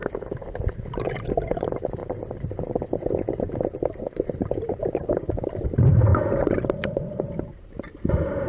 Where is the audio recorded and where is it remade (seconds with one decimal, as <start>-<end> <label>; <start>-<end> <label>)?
0.0-6.1 remade; 6.1-6.9 recorded; 6.9-8.5 remade